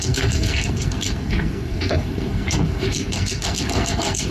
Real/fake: fake